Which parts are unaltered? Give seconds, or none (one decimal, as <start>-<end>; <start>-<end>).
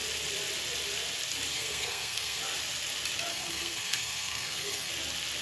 0.0-1.5; 2.4-3.3; 4.9-5.4